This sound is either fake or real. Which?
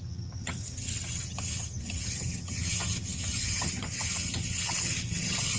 fake